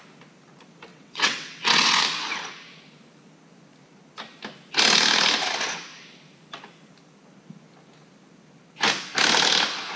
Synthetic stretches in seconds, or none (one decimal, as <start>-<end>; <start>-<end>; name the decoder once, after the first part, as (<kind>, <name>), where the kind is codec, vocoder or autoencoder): 0.9-2.0 (vocoder, WaveNeXt)